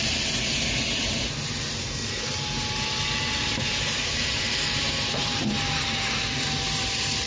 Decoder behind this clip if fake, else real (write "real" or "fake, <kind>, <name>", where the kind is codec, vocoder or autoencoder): fake, vocoder, BigVGAN v2